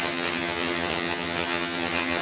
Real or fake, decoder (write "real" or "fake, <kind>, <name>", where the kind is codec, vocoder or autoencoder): fake, vocoder, HiFi-GAN